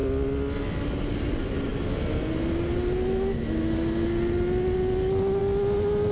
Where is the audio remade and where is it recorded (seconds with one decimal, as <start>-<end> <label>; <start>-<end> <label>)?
0.0-6.1 recorded